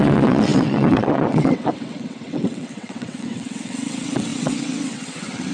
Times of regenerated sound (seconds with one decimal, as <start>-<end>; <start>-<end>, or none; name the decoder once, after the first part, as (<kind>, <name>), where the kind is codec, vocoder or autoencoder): 0.0-5.5 (vocoder, WaveNeXt)